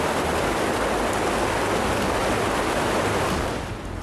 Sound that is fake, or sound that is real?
real